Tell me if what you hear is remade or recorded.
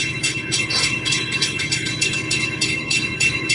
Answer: remade